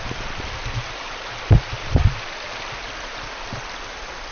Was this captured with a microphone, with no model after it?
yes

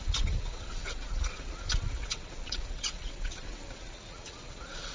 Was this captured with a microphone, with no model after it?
no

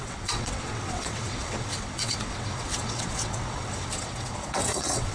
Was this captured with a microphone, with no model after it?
no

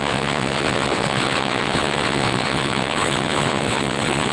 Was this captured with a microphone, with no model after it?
no